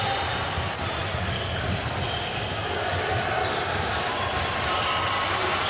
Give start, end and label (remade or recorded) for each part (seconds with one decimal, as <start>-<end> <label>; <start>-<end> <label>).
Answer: 0.0-5.7 recorded